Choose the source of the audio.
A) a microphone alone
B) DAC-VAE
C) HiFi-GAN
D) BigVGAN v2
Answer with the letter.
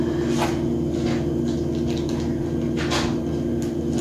A